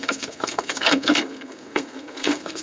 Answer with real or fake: fake